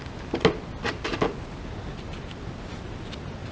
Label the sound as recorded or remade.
recorded